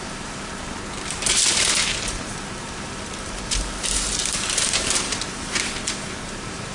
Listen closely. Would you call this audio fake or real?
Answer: fake